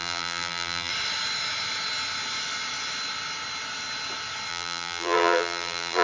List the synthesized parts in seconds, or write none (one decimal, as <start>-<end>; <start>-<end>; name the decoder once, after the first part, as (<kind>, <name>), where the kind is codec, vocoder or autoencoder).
0.0-0.9 (vocoder, BigVGAN v2); 4.5-6.0